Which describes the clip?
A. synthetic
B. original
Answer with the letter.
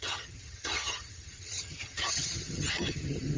A